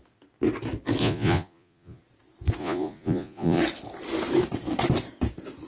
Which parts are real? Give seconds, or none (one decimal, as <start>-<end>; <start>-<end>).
0.0-1.0; 2.0-2.6; 3.6-5.7